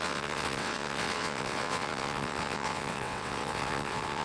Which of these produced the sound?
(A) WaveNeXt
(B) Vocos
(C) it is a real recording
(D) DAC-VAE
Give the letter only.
A